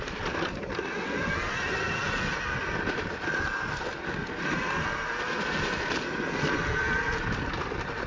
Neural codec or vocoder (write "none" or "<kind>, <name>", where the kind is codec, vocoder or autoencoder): none